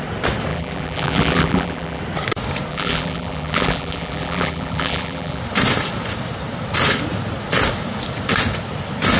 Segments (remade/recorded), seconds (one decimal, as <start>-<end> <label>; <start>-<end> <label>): 0.0-0.5 recorded; 0.5-2.0 remade; 2.0-2.7 recorded; 2.7-5.4 remade; 5.4-9.2 recorded